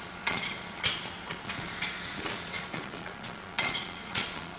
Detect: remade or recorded remade